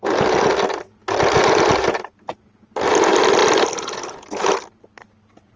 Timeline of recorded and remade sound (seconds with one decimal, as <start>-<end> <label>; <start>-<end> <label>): 0.0-5.6 recorded